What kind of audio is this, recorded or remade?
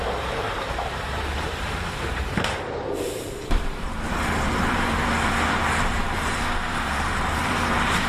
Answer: remade